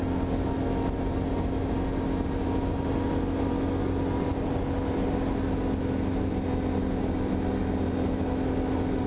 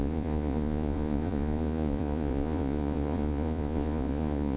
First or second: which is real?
first